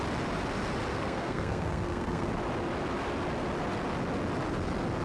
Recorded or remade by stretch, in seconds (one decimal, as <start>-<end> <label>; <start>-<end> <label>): 0.0-0.9 recorded; 0.9-2.3 remade; 2.3-5.0 recorded